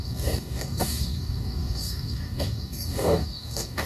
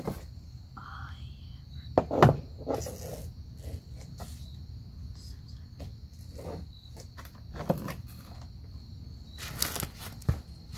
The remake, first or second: first